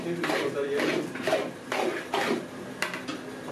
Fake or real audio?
real